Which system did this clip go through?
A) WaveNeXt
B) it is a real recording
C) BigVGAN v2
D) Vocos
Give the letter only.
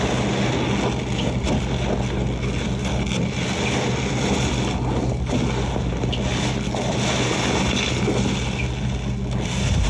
B